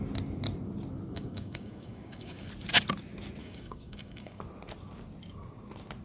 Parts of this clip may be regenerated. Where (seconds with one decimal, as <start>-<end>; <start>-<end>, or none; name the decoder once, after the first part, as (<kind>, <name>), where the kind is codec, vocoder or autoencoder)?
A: 1.1-2.5 (codec, DAC); 3.4-4.4